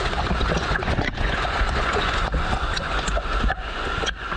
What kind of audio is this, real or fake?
fake